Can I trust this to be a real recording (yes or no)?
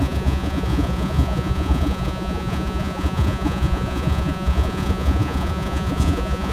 no